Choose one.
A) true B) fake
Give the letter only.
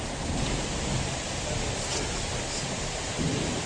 A